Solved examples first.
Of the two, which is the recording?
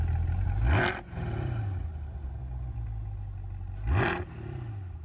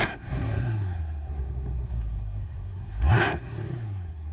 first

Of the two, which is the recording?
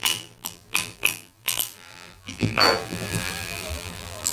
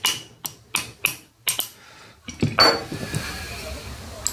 second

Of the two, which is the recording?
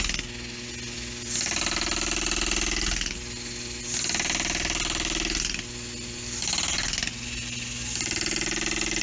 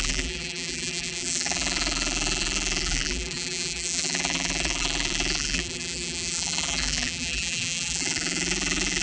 first